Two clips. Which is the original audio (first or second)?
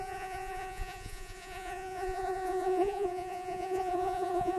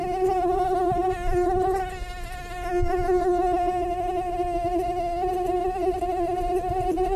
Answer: second